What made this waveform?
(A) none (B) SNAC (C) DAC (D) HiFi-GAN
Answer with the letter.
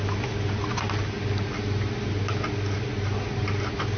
A